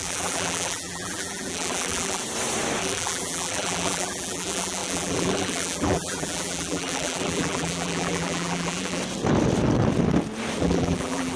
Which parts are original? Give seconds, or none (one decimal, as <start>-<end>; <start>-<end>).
2.2-2.8; 9.0-10.6